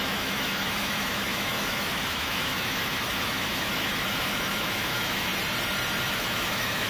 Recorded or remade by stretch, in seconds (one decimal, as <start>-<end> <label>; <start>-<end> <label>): 0.0-5.3 remade; 5.3-6.0 recorded; 6.0-6.9 remade